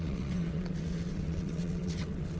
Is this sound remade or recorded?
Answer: remade